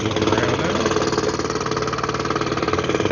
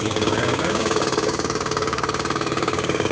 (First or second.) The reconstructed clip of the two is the second